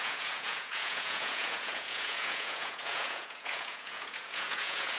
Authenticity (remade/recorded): remade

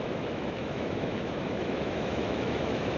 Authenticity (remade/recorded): remade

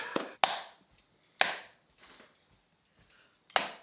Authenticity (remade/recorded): recorded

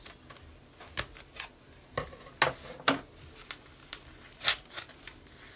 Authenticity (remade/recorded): recorded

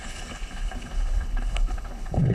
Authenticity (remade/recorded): remade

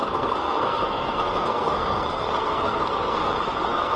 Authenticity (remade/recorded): remade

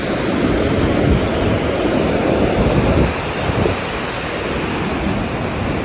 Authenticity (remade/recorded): recorded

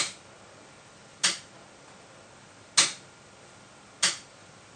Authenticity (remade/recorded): recorded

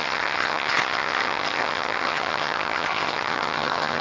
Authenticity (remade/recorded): remade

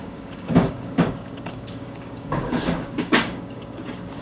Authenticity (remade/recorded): remade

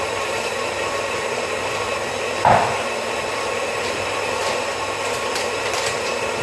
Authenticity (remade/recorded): remade